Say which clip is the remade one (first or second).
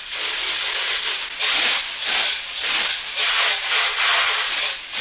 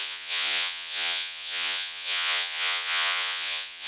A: second